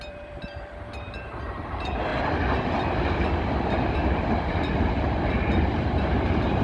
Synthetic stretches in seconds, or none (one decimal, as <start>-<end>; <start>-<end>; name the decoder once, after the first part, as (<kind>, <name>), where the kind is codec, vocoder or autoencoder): 0.0-2.1 (vocoder, BigVGAN v2); 4.8-6.6